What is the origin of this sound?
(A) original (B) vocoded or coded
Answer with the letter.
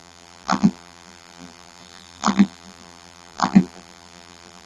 B